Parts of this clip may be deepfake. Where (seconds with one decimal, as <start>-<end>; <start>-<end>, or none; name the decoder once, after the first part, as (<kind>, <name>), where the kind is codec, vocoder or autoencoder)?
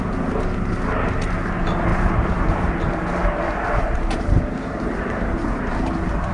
1.9-5.7 (vocoder, BigVGAN v2)